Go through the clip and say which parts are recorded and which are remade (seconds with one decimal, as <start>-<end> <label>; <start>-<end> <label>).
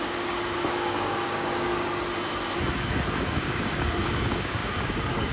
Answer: 0.0-1.7 remade; 1.7-3.2 recorded; 3.2-5.3 remade